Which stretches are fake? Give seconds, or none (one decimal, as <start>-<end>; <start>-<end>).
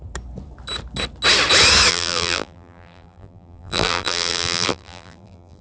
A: 1.9-5.6